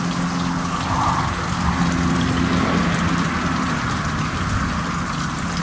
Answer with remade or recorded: recorded